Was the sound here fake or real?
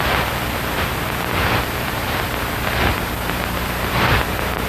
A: fake